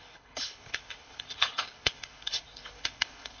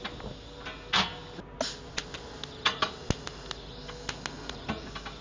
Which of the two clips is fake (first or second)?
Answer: first